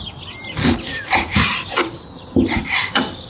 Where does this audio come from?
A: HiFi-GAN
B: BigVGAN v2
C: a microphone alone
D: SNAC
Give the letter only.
B